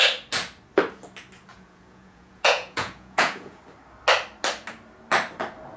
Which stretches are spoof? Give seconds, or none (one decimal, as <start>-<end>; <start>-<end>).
1.5-3.6